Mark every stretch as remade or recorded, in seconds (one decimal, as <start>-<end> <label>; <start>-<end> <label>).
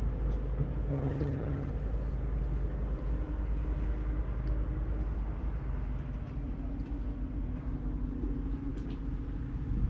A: 0.0-0.9 recorded; 0.9-1.7 remade; 1.7-9.9 recorded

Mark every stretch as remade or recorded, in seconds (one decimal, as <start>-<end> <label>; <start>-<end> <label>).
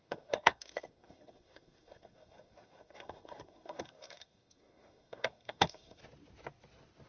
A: 0.0-6.0 remade; 6.0-7.1 recorded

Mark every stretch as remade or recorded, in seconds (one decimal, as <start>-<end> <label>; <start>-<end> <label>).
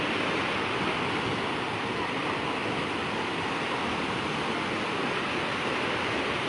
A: 0.0-6.5 recorded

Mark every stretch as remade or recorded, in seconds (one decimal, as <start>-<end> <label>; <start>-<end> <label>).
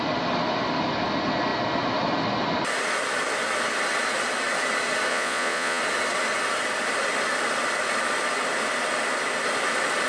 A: 0.0-5.1 recorded; 5.1-5.8 remade; 5.8-10.1 recorded